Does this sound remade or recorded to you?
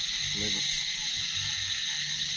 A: recorded